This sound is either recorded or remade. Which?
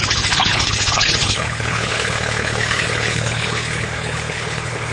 remade